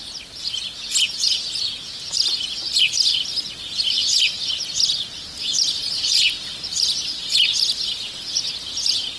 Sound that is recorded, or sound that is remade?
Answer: recorded